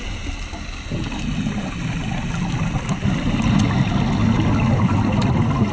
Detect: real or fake real